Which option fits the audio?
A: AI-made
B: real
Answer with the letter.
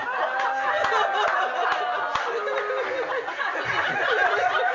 B